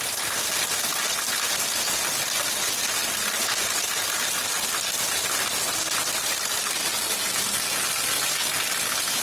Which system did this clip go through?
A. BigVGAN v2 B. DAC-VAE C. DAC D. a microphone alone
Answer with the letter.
D